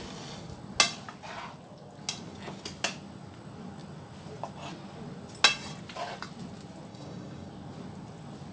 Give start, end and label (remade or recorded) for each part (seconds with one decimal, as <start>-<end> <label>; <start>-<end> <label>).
0.0-6.9 recorded; 6.9-7.5 remade; 7.5-8.5 recorded